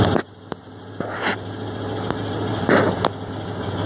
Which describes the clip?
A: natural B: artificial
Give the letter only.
A